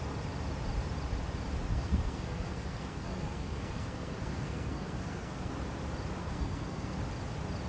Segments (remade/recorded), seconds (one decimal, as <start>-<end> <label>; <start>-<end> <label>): 0.0-1.7 recorded; 1.7-5.5 remade; 5.5-6.2 recorded; 6.2-7.0 remade; 7.0-7.7 recorded